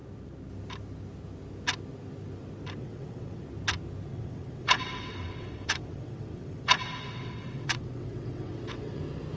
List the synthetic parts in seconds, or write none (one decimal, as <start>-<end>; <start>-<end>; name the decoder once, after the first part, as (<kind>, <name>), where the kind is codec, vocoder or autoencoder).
2.8-3.4 (vocoder, WaveNeXt); 4.1-9.0